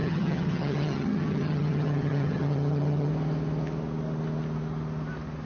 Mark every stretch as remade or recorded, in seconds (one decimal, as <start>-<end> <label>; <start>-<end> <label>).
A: 0.0-3.1 remade; 3.1-5.5 recorded